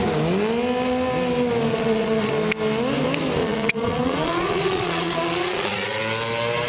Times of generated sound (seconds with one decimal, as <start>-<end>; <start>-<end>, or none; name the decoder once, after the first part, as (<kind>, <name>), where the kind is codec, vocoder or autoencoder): 1.7-2.3 (vocoder, Vocos); 3.4-6.0